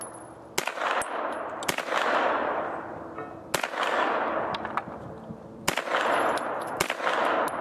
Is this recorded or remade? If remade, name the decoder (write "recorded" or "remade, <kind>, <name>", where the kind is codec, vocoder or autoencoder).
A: recorded